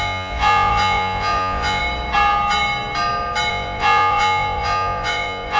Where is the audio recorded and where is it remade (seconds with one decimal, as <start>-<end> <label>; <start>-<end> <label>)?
0.0-1.8 remade; 1.8-3.5 recorded; 3.5-5.6 remade